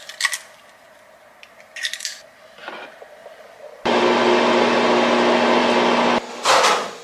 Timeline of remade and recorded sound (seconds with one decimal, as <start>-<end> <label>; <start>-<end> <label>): 0.0-7.0 recorded